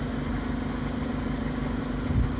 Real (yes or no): yes